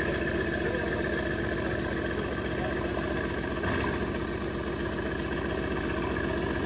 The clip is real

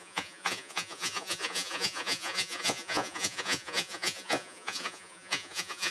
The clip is fake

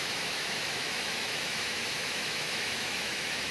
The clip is fake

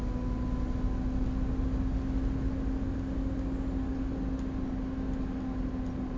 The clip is real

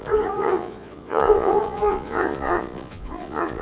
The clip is fake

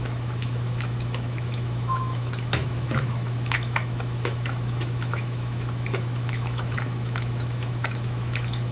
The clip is fake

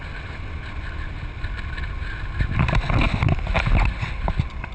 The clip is real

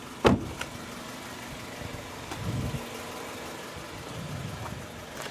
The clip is real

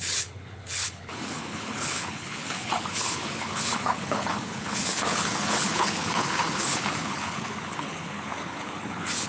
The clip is fake